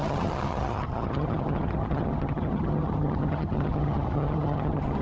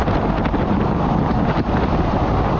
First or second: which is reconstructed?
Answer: first